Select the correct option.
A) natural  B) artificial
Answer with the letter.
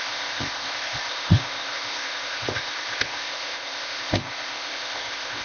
B